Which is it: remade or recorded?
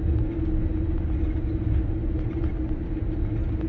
recorded